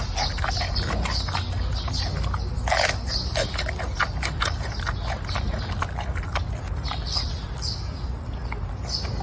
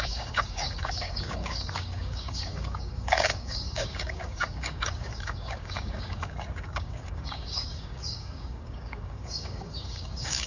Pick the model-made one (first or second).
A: second